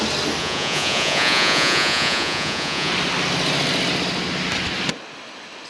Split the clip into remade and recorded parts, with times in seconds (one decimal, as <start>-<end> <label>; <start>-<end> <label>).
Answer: 0.0-0.4 recorded; 0.4-2.9 remade; 2.9-5.7 recorded